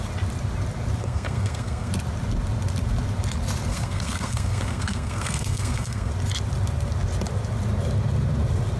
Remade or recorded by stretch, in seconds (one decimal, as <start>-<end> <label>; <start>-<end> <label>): 0.0-1.0 recorded; 1.0-1.9 remade; 1.9-3.7 recorded; 3.7-6.1 remade; 6.1-8.8 recorded